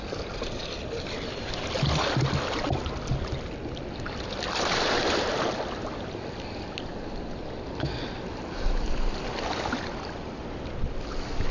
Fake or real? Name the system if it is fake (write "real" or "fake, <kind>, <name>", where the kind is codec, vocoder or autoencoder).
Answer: real